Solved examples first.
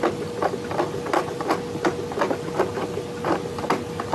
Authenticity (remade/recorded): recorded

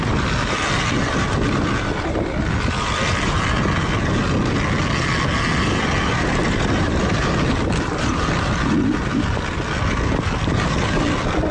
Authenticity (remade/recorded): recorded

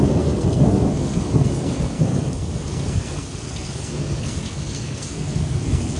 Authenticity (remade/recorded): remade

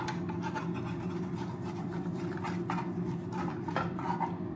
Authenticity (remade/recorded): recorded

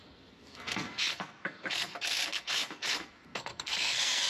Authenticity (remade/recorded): remade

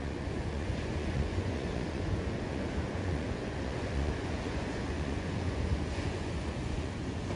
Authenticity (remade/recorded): remade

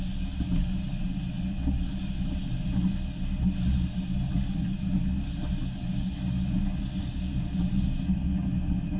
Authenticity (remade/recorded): recorded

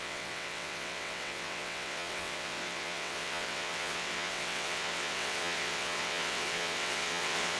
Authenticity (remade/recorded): remade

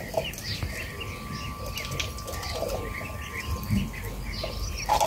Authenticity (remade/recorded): recorded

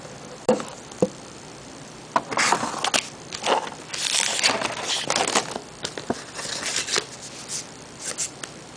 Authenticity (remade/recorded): recorded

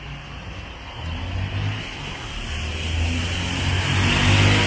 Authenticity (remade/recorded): recorded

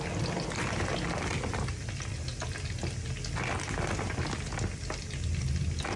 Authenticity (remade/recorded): recorded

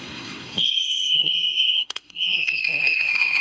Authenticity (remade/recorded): remade